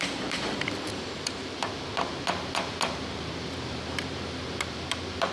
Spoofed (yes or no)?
yes